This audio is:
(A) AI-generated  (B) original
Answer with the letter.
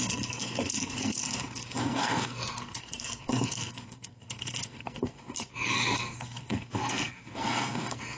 A